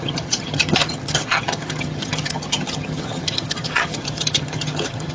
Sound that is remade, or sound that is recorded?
remade